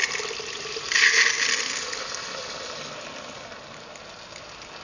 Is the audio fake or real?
real